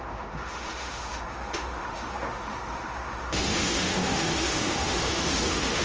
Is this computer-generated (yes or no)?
yes